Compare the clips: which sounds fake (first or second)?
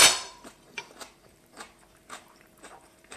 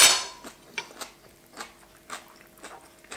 first